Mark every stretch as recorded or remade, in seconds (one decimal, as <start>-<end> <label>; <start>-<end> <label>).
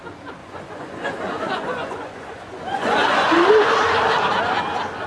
0.0-0.4 recorded; 0.4-3.5 remade; 3.5-5.1 recorded